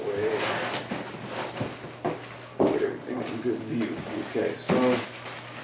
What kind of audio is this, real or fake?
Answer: real